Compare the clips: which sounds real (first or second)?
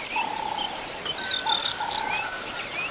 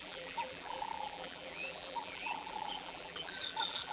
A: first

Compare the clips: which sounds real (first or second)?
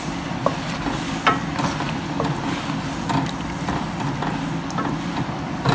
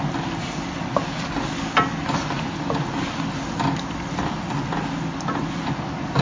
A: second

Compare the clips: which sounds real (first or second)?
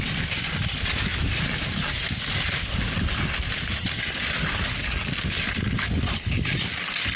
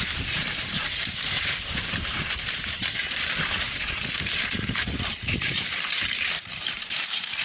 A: first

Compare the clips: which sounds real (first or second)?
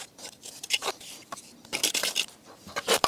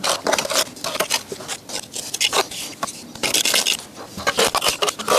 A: second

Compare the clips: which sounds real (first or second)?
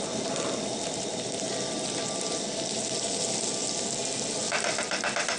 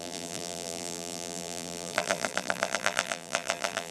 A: first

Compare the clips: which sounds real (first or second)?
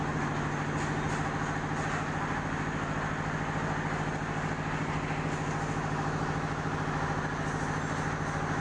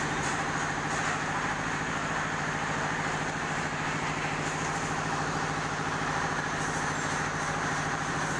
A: first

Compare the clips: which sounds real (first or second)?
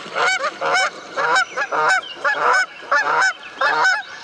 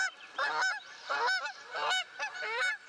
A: second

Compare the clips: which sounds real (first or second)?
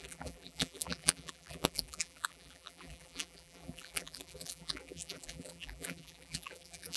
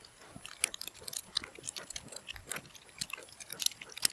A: second